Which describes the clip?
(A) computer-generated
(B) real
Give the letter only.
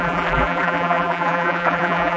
A